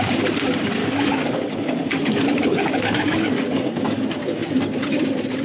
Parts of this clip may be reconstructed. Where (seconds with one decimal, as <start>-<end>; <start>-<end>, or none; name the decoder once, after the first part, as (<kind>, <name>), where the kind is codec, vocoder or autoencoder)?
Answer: 0.8-4.0 (codec, DAC)